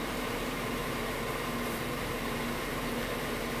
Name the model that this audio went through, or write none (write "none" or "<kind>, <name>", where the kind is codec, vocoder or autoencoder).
vocoder, BigVGAN v2